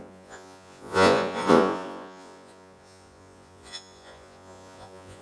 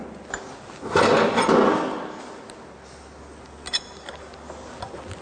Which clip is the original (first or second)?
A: second